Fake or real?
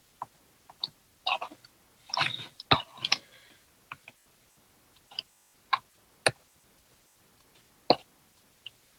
real